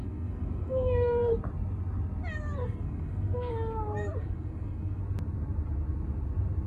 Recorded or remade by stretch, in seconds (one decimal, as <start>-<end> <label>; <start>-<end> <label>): 0.0-1.3 remade; 1.3-2.6 recorded; 2.6-3.5 remade; 3.5-4.2 recorded; 4.2-5.0 remade; 5.0-6.7 recorded